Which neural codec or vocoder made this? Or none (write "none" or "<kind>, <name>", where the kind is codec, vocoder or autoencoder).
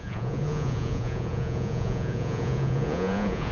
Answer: vocoder, Vocos